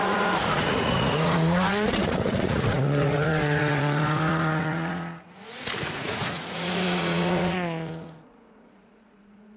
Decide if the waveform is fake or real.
fake